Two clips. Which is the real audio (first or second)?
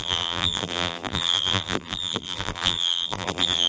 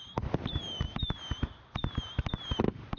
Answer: second